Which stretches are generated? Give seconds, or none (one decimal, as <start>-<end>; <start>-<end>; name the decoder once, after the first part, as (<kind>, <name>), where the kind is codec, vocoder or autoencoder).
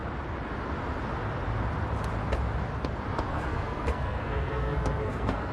3.3-5.5 (codec, SNAC)